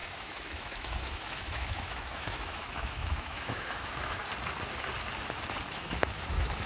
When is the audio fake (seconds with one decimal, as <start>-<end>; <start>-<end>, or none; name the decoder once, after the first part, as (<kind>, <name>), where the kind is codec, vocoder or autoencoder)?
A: 0.0-4.2 (autoencoder, DAC-VAE); 5.7-6.7